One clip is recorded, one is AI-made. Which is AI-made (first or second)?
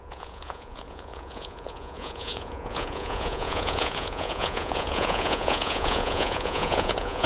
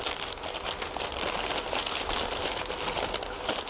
first